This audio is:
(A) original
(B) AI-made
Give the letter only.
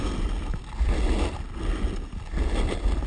A